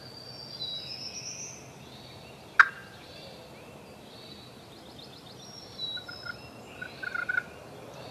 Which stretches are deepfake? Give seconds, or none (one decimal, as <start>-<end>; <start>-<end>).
none